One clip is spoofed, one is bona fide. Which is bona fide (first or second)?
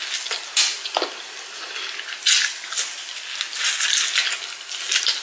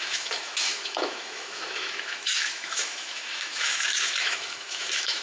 first